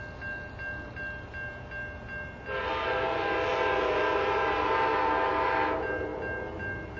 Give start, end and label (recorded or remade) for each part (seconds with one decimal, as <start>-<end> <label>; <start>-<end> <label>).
0.0-7.0 recorded